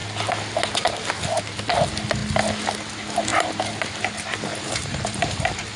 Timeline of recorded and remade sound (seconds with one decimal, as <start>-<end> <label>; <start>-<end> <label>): 0.0-4.5 recorded; 4.5-5.8 remade